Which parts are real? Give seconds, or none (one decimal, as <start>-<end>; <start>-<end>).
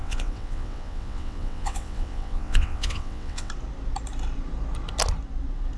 3.5-5.8